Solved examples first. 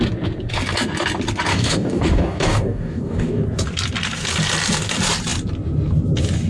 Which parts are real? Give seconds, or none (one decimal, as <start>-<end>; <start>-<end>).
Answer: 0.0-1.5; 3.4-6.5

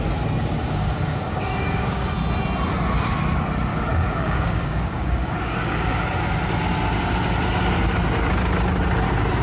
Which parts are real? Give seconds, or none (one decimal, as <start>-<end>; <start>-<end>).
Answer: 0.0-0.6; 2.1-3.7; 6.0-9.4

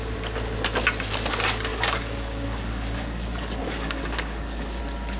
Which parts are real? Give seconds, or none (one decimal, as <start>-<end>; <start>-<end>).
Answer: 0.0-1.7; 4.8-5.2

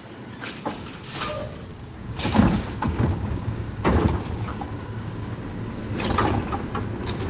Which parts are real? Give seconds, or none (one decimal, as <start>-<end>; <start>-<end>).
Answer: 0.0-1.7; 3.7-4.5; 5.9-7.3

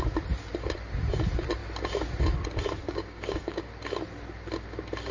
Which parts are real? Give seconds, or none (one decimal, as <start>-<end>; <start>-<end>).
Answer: 0.0-2.8; 3.6-5.1